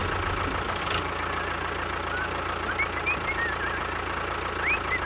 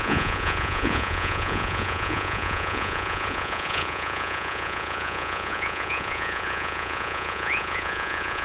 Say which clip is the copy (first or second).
second